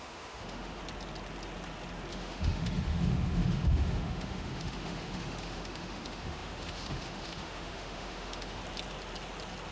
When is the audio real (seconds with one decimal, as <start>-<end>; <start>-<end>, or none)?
0.8-2.1; 8.6-9.7